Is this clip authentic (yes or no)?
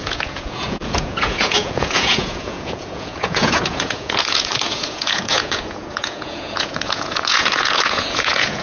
no